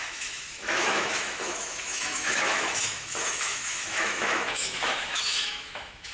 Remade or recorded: remade